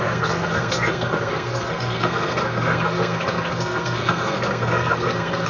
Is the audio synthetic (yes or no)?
yes